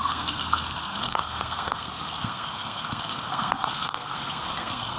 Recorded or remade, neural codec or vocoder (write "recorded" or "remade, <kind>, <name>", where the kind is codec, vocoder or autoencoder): remade, codec, SNAC